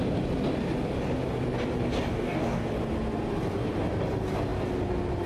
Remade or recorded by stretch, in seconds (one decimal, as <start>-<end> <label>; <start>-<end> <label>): 0.0-2.1 recorded; 2.1-2.7 remade; 2.7-5.3 recorded